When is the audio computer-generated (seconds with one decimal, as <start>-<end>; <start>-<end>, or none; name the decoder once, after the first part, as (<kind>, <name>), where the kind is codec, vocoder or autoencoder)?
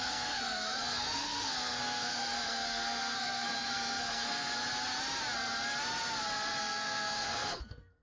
0.0-4.5 (codec, SNAC); 6.6-8.0